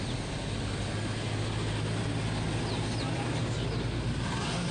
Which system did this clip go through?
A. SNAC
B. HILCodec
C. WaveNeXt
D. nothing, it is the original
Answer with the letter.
D